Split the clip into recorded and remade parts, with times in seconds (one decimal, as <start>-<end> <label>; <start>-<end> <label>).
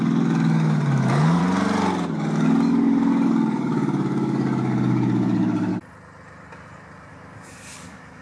0.0-1.4 remade; 1.4-2.1 recorded; 2.1-5.7 remade; 5.7-7.1 recorded; 7.1-8.2 remade